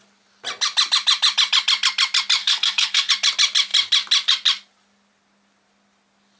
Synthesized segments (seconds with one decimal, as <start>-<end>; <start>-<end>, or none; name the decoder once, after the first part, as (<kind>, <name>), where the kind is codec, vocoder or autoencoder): 2.4-3.1 (codec, SNAC)